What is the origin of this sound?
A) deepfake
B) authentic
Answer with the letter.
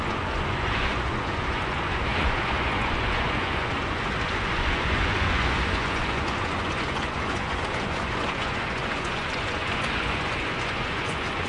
A